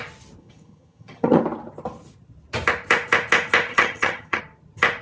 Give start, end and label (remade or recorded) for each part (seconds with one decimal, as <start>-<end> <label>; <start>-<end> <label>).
0.0-0.4 recorded; 0.4-1.4 remade; 1.4-3.7 recorded; 3.7-4.4 remade; 4.4-5.0 recorded